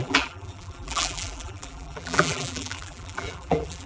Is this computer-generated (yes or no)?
yes